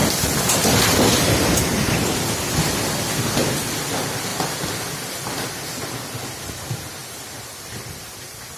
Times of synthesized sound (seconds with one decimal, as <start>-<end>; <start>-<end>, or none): 0.0-3.8; 4.3-5.3; 7.0-8.0